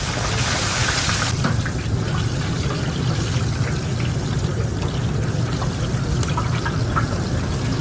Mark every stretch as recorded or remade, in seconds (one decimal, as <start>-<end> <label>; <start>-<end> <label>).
0.0-7.8 recorded